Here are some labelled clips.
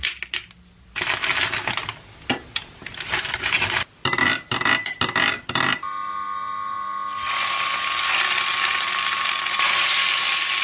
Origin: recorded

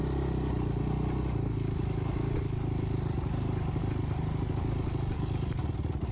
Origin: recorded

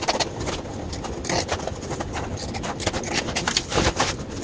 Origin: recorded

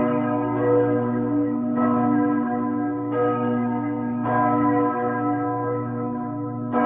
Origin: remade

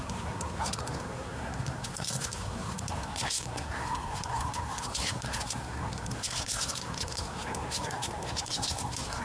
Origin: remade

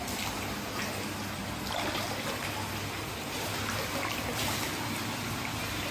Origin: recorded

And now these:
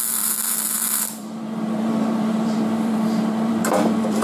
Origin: remade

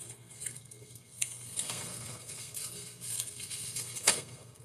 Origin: remade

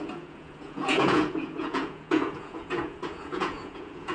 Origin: remade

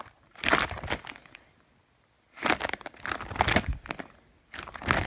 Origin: recorded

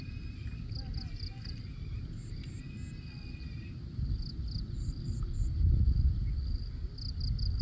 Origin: recorded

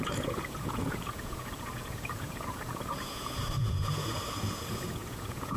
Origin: remade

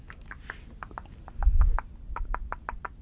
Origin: recorded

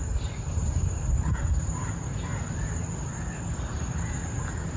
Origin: recorded